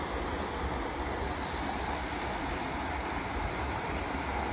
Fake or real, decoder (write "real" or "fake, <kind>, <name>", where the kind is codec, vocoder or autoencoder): real